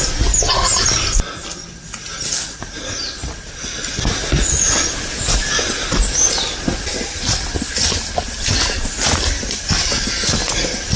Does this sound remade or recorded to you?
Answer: recorded